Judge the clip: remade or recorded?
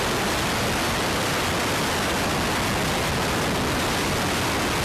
recorded